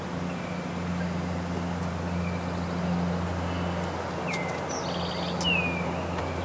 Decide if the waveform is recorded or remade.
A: recorded